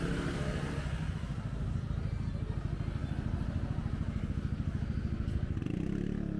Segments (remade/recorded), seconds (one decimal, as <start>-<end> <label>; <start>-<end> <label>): 0.0-6.4 recorded